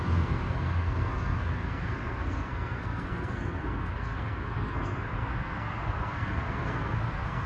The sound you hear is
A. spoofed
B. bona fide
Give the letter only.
A